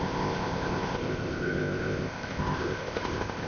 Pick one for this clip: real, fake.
fake